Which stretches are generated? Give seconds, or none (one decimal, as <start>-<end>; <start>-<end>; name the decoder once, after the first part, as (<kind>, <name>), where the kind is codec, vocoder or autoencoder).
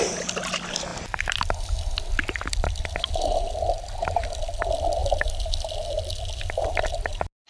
none